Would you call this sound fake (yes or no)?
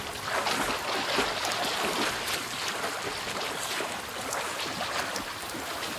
no